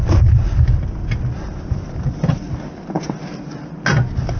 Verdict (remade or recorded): recorded